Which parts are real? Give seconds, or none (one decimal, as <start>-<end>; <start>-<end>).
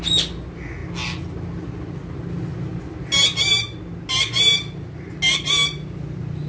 0.0-6.5